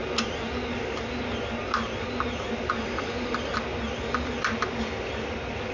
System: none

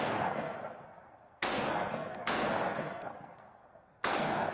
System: codec, SNAC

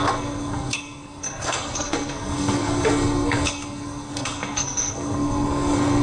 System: codec, SNAC